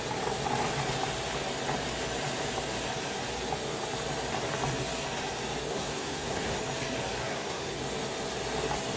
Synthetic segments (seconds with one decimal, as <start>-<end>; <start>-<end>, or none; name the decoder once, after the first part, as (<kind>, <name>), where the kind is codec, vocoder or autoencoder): 5.7-6.6 (codec, SNAC); 7.2-7.8